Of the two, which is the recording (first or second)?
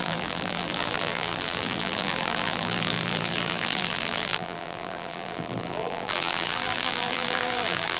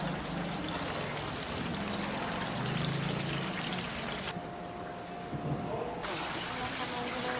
second